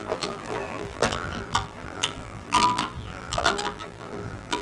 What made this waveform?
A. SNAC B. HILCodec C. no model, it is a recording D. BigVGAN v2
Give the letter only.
D